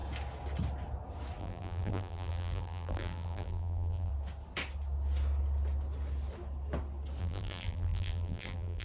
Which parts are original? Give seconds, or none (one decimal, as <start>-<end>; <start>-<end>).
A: 0.0-1.4; 4.1-7.2